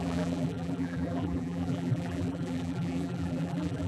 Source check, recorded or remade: remade